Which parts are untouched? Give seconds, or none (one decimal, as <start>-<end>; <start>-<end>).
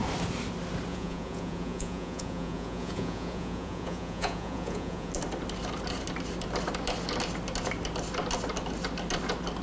0.0-0.9; 5.1-9.6